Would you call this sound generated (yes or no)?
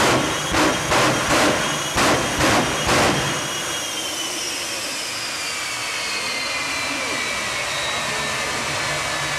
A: no